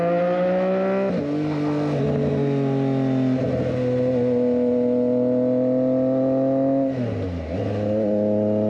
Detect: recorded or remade recorded